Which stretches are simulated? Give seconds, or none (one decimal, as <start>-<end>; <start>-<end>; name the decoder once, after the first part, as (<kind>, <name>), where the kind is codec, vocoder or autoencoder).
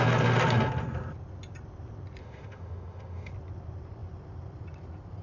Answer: 2.2-3.3 (autoencoder, DAC-VAE)